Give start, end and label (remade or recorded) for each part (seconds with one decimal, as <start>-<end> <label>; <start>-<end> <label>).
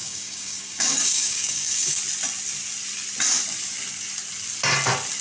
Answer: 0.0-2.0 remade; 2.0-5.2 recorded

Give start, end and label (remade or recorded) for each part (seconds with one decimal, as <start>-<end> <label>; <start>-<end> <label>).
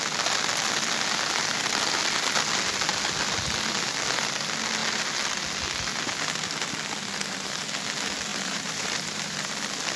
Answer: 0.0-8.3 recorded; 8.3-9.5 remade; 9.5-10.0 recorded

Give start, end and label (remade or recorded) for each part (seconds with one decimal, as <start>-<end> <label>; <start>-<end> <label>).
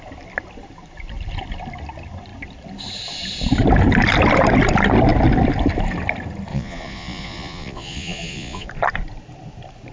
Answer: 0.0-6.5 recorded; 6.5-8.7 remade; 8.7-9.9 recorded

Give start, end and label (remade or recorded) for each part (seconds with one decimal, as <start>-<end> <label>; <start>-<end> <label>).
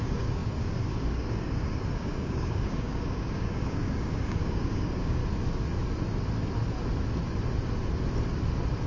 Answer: 0.0-5.2 remade; 5.2-8.9 recorded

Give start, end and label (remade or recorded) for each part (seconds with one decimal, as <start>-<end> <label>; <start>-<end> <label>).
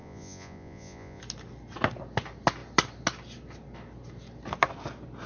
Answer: 0.0-1.2 remade; 1.2-5.3 recorded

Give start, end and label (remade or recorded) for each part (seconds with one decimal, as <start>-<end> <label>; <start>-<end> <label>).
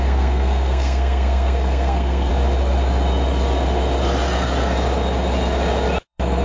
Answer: 0.0-2.3 remade; 2.3-6.0 recorded; 6.0-6.4 remade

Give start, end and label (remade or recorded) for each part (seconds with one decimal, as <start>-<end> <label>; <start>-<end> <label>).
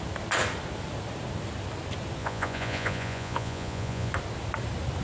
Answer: 0.0-2.2 recorded; 2.2-4.1 remade; 4.1-5.0 recorded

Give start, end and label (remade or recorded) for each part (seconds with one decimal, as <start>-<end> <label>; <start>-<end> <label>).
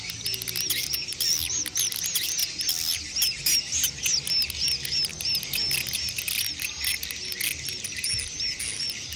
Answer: 0.0-9.2 recorded